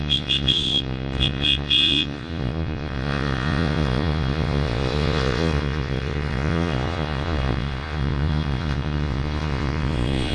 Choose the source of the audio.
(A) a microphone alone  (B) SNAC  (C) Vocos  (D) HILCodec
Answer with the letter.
C